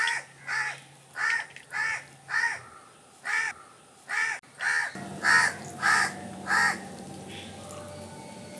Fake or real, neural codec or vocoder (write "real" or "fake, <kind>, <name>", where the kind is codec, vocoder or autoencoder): real